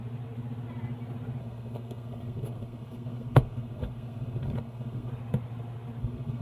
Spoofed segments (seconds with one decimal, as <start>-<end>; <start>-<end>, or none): 1.4-5.1; 6.0-6.4